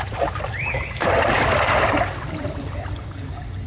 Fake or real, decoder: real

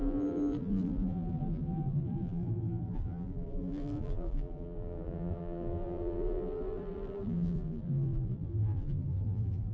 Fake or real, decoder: fake, vocoder, BigVGAN v2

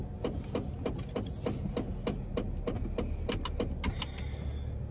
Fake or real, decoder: real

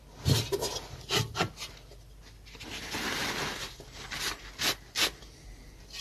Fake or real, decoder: fake, vocoder, BigVGAN v2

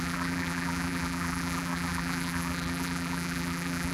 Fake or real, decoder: fake, vocoder, BigVGAN v2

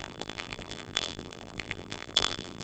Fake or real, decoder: fake, vocoder, BigVGAN v2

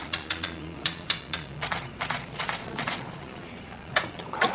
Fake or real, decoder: fake, vocoder, Vocos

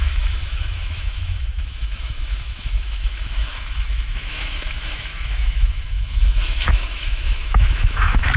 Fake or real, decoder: fake, autoencoder, DAC-VAE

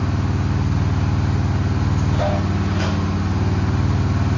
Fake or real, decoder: real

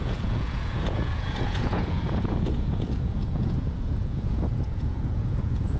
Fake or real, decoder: fake, vocoder, Vocos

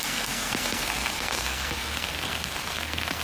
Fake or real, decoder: fake, codec, SNAC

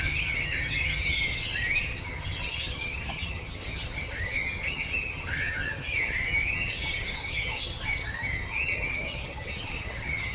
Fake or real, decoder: fake, vocoder, HiFi-GAN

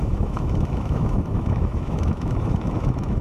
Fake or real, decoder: fake, autoencoder, DAC-VAE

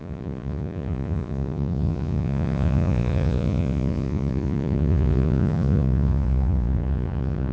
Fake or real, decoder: fake, vocoder, Vocos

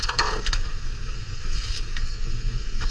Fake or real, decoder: fake, codec, SNAC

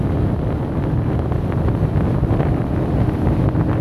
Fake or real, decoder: real